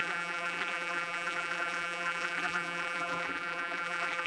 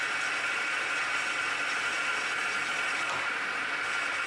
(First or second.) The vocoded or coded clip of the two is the first